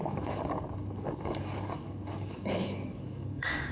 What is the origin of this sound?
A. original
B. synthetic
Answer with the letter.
B